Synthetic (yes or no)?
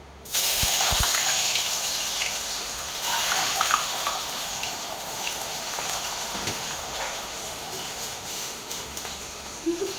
yes